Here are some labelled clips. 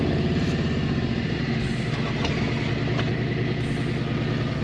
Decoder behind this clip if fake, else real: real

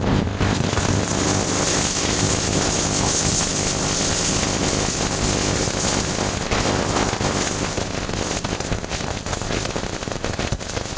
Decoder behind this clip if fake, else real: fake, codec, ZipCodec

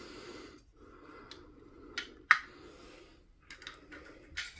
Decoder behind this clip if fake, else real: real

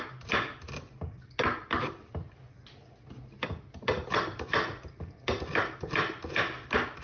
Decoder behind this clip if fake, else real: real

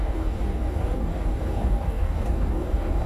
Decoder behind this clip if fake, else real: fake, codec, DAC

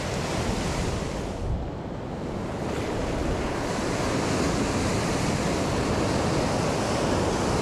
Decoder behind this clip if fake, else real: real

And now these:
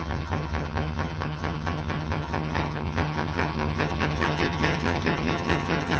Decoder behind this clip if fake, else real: fake, vocoder, HiFi-GAN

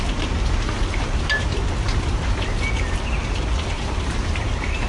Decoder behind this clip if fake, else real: real